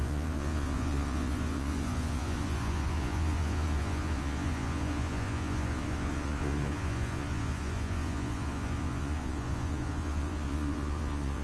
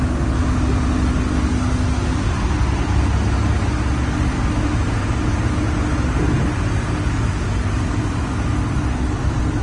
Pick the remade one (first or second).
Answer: first